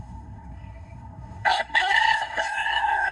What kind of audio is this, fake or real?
fake